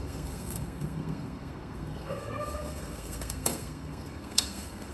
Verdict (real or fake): fake